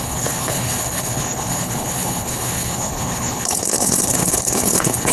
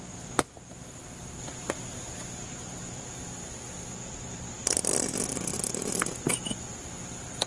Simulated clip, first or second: first